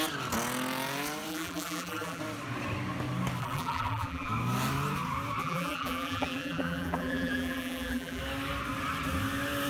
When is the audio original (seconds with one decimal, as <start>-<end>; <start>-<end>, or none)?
0.0-1.3; 2.2-3.4; 4.3-5.4; 8.2-9.7